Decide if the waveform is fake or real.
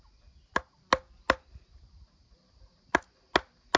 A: real